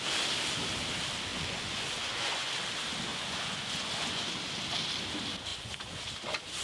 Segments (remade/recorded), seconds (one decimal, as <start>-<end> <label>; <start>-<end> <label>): 0.0-1.3 recorded; 1.3-2.5 remade; 2.5-3.1 recorded; 3.1-4.3 remade; 4.3-5.5 recorded; 5.5-6.0 remade; 6.0-6.6 recorded